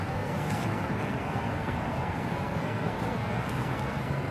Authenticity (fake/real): fake